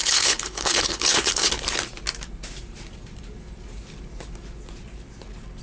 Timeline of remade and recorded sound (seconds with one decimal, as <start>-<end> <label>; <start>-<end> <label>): 0.0-1.5 remade; 1.5-5.6 recorded